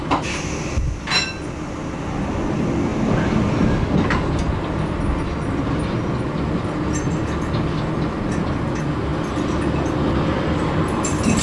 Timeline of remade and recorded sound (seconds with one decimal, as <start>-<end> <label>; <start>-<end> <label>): 0.0-11.4 recorded